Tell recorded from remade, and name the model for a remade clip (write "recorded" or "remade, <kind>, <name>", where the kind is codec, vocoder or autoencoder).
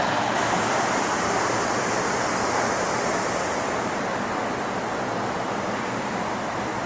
recorded